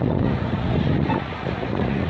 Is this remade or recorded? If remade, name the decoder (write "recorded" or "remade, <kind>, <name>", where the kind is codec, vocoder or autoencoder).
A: remade, vocoder, Vocos